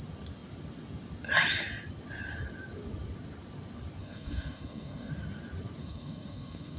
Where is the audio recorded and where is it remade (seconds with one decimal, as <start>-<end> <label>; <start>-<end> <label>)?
0.0-4.0 recorded; 4.0-5.1 remade; 5.1-5.8 recorded; 5.8-6.8 remade